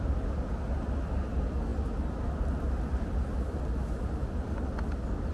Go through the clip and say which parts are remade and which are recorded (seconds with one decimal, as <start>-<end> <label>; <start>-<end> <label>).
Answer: 0.0-5.3 recorded